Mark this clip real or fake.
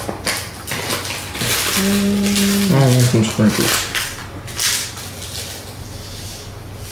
real